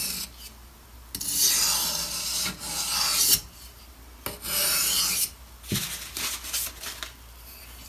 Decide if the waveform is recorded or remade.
recorded